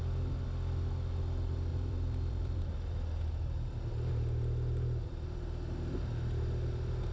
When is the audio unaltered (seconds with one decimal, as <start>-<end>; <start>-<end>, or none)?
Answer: 0.0-1.7; 2.7-7.1